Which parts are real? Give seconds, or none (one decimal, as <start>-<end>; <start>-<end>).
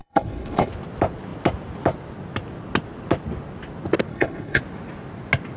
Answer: 0.7-4.1; 4.6-5.6